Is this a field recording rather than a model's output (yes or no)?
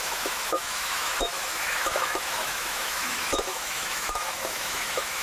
no